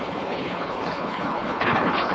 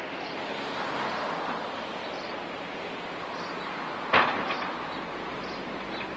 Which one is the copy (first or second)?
first